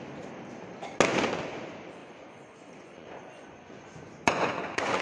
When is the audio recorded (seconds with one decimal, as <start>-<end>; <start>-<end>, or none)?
0.0-2.0